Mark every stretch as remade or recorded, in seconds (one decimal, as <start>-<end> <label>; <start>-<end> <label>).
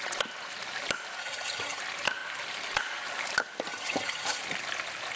0.0-1.2 recorded; 1.2-1.8 remade; 1.8-3.7 recorded; 3.7-4.4 remade; 4.4-5.2 recorded